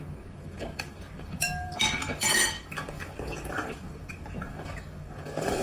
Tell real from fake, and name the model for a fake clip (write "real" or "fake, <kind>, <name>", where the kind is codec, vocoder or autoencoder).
fake, codec, DAC